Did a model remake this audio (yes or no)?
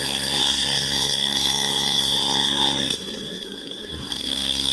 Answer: yes